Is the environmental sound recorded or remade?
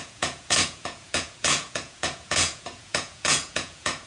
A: remade